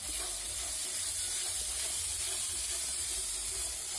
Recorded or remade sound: recorded